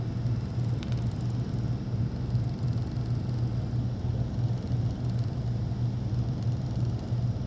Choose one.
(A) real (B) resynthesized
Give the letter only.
A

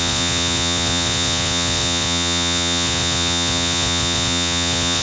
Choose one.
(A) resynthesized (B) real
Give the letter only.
A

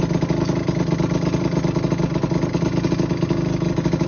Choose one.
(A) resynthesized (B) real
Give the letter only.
B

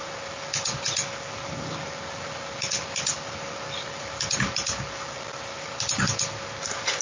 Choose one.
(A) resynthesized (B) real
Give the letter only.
B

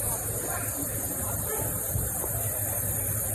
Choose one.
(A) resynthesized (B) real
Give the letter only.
B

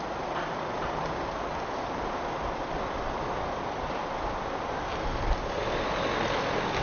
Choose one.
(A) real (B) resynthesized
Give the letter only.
A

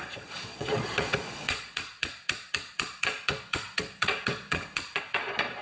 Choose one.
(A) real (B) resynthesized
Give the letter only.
B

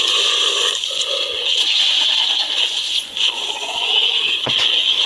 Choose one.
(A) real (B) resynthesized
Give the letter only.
B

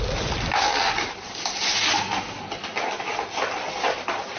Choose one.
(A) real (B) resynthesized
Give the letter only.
A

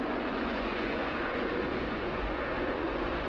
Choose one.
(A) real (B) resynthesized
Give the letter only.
B